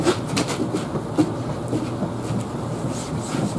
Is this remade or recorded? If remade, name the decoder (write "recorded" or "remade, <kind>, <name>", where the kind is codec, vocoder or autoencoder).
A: recorded